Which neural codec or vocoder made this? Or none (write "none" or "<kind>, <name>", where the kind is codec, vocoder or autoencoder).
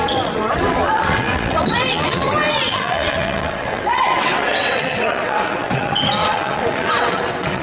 vocoder, WaveNeXt